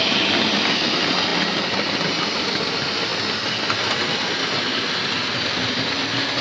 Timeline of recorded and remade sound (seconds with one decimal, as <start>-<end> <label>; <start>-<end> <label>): 0.0-6.4 recorded